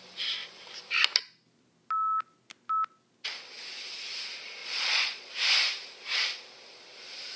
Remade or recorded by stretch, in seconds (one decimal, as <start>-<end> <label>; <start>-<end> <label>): 0.0-4.6 recorded; 4.6-5.3 remade; 5.3-7.4 recorded